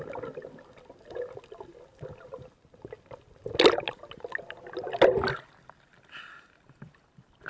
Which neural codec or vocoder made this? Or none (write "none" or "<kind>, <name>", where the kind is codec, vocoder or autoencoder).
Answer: none